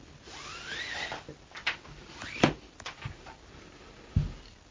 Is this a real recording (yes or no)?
yes